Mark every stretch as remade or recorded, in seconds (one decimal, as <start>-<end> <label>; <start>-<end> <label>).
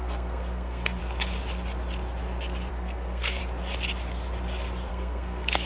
0.0-1.0 remade; 1.0-2.7 recorded; 2.7-3.4 remade; 3.4-4.9 recorded; 4.9-5.7 remade